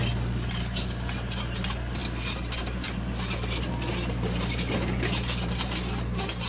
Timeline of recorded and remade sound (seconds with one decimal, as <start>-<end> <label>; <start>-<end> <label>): 0.0-6.5 recorded